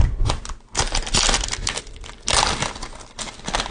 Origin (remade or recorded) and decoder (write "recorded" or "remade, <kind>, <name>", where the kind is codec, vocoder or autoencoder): recorded